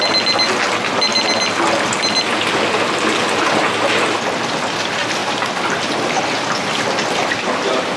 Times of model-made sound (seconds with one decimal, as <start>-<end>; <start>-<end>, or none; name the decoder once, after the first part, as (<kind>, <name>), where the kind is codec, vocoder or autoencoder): 5.2-6.2 (vocoder, BigVGAN v2)